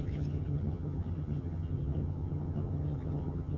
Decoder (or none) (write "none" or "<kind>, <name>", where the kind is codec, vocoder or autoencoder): vocoder, HiFi-GAN